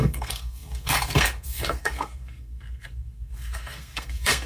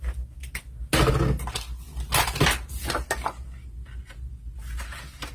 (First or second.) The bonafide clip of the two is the second